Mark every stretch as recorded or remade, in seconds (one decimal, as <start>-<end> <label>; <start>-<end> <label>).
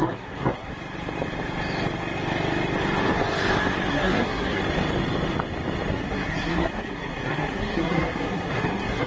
0.0-0.7 remade; 0.7-3.9 recorded; 3.9-4.6 remade; 4.6-5.9 recorded; 5.9-9.1 remade